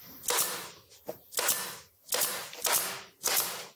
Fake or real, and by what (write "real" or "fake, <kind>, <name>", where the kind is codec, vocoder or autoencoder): real